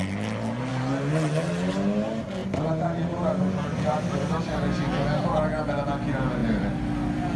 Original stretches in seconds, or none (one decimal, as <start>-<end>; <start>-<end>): 0.0-6.4